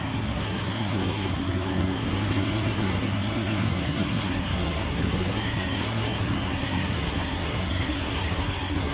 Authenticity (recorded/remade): remade